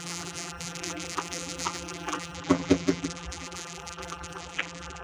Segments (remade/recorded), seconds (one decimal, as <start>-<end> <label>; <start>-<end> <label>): 0.0-5.0 remade